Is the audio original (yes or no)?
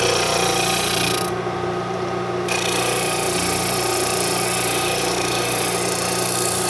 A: yes